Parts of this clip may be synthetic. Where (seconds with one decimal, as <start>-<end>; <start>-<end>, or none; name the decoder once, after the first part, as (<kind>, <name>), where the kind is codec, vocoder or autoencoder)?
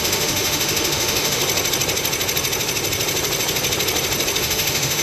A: 0.0-1.4 (autoencoder, DAC-VAE); 4.4-5.0